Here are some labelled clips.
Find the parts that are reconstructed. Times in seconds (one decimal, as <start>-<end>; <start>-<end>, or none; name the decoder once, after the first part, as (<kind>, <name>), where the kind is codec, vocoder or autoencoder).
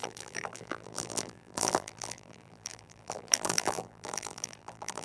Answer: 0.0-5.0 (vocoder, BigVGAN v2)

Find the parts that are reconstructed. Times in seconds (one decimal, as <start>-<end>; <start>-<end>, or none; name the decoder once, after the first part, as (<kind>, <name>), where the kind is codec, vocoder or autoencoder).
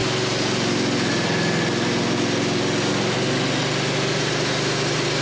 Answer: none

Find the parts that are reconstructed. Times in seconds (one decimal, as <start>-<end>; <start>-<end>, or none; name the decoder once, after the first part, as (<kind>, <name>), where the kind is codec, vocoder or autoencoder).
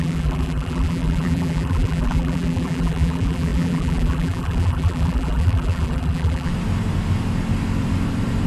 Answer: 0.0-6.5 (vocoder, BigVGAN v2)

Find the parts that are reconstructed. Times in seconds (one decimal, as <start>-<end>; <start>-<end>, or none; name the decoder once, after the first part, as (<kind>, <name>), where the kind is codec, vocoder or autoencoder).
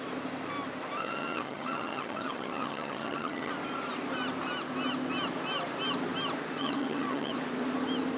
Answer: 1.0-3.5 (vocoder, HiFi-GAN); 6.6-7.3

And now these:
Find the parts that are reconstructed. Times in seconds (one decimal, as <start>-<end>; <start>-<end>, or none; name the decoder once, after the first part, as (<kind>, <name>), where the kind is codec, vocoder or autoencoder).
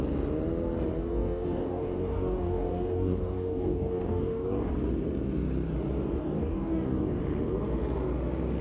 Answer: 1.0-4.7 (codec, DAC); 6.2-7.2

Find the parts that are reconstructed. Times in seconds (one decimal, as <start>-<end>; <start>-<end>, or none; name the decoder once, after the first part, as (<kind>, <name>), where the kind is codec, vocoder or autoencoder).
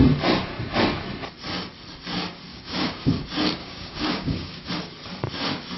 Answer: 2.5-3.1 (codec, DAC); 3.6-4.7